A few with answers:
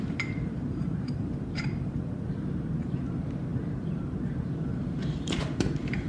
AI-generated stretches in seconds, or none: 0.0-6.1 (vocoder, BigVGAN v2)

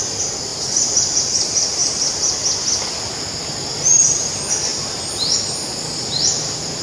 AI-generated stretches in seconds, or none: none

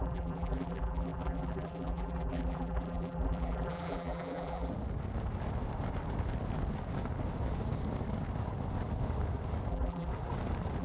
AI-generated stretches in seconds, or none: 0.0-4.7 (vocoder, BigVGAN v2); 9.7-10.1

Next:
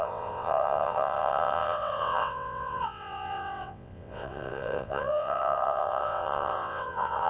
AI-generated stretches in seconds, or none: 0.0-7.3 (vocoder, WaveNeXt)

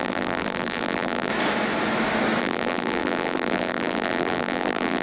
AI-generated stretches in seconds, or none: 0.0-1.3 (vocoder, BigVGAN v2); 2.4-5.0

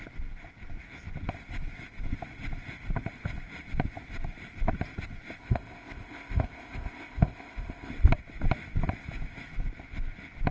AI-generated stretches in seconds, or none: 5.4-7.9 (codec, ZipCodec)

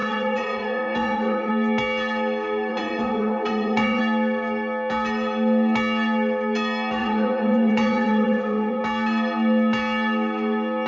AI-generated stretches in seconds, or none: 0.0-1.5 (vocoder, Vocos); 2.7-4.0; 7.0-8.8

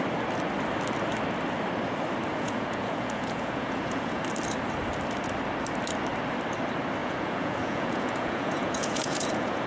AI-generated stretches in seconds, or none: 2.3-4.2 (vocoder, Vocos); 7.0-9.7